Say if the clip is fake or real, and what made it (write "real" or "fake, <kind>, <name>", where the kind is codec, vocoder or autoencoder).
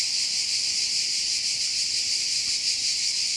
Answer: real